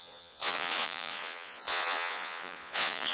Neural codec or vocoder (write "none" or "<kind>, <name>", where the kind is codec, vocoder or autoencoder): vocoder, Vocos